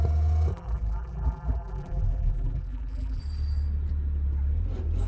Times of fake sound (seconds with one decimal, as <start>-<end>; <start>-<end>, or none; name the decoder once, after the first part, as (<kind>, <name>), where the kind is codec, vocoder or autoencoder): 0.5-3.2 (vocoder, BigVGAN v2)